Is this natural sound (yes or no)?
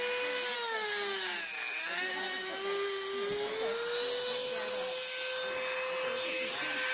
yes